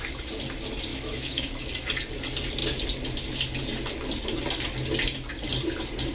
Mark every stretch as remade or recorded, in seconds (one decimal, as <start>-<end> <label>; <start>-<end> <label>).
0.0-0.9 recorded; 0.9-1.6 remade; 1.6-6.1 recorded